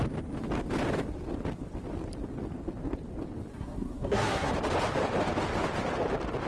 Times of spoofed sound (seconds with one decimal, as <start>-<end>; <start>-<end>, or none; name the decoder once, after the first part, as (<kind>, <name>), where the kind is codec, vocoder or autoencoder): 3.5-4.5 (codec, SNAC)